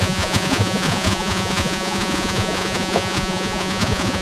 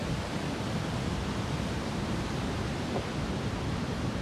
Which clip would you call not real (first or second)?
first